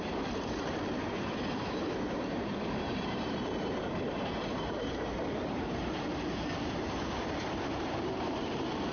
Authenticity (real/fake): fake